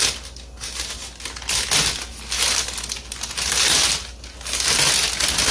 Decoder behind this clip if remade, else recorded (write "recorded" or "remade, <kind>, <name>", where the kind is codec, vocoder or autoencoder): recorded